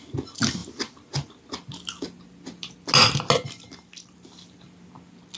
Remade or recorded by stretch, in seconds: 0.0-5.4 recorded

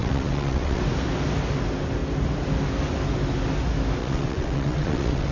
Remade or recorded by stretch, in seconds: 0.0-0.8 remade; 0.8-4.0 recorded; 4.0-5.3 remade

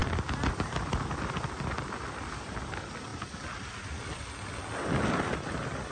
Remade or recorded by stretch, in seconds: 0.0-5.9 recorded

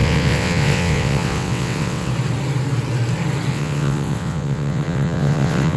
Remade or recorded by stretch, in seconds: 0.0-2.1 remade; 2.1-3.5 recorded; 3.5-5.8 remade

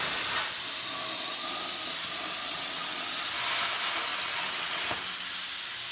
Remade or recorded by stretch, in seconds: 0.0-2.4 recorded; 2.4-3.1 remade; 3.1-4.1 recorded; 4.1-4.8 remade; 4.8-5.9 recorded

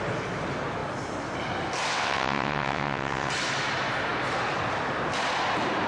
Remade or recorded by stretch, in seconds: 0.0-1.9 recorded; 1.9-3.3 remade; 3.3-5.9 recorded

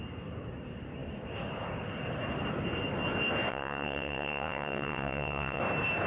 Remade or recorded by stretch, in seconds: 0.0-3.5 recorded; 3.5-5.6 remade; 5.6-6.1 recorded

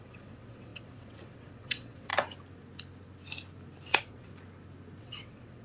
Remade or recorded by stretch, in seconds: 0.0-2.1 remade; 2.1-3.9 recorded; 3.9-4.3 remade; 4.3-5.0 recorded; 5.0-5.6 remade